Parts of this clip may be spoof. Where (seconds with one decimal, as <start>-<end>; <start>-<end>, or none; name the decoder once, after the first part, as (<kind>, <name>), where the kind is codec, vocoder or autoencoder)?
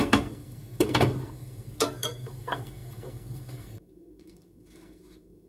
0.0-5.5 (codec, SNAC)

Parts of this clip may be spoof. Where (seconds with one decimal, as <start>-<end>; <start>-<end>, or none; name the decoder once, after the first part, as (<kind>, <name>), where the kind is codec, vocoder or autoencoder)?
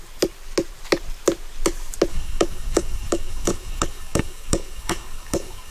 2.1-5.7 (codec, DAC)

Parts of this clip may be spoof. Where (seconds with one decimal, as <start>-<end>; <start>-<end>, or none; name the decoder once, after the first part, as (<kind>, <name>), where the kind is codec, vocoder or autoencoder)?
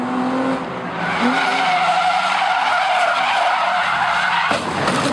none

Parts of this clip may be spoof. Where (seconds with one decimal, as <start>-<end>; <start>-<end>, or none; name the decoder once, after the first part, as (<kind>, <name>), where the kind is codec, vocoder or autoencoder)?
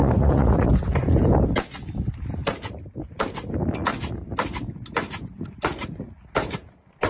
0.0-0.7 (vocoder, Vocos)